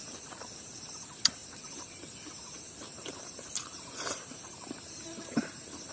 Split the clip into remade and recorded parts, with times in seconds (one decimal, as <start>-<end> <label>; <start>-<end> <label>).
0.0-5.9 remade